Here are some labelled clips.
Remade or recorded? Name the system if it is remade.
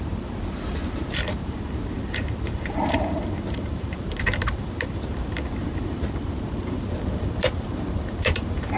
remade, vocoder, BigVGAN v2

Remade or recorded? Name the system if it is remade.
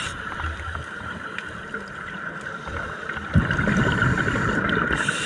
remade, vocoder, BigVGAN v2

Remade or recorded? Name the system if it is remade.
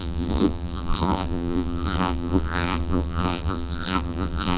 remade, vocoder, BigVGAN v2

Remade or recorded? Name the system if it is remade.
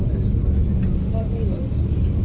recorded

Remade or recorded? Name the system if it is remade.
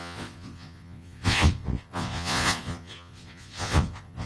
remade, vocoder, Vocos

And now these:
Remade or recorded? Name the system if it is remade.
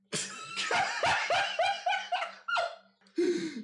recorded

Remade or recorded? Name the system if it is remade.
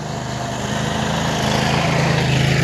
recorded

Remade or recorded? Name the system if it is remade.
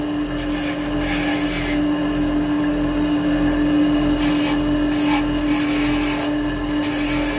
recorded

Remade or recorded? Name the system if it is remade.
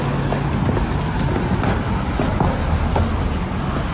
recorded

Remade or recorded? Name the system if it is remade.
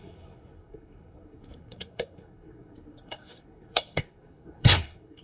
remade, codec, SNAC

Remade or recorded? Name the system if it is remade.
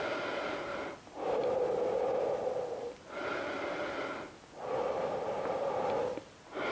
recorded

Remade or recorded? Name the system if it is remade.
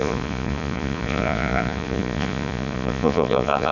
remade, vocoder, Vocos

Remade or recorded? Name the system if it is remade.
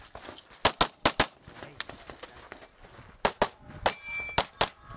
recorded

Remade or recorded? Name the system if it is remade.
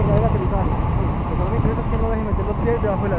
recorded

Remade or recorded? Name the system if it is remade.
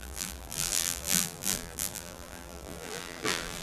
remade, vocoder, BigVGAN v2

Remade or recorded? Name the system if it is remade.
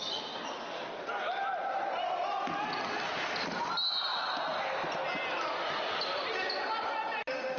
recorded